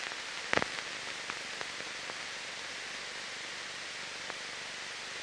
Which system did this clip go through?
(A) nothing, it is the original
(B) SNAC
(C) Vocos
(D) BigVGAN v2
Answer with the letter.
A